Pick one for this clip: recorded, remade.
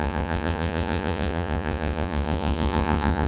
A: remade